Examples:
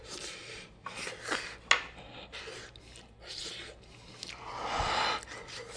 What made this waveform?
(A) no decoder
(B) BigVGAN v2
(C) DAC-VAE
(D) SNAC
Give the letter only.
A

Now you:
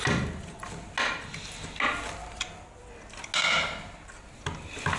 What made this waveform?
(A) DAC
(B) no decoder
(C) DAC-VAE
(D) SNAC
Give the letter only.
B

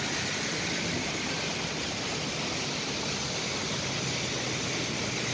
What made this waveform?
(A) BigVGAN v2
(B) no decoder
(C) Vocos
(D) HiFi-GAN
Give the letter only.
B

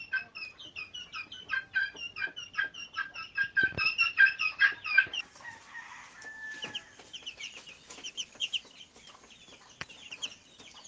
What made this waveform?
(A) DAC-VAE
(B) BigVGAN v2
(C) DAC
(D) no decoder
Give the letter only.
B